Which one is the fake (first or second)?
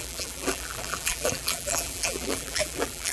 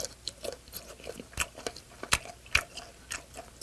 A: first